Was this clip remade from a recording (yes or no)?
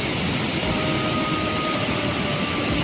no